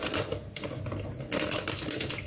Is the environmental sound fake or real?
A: real